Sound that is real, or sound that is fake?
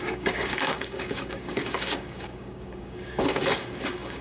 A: fake